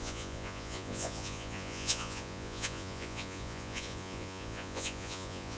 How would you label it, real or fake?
fake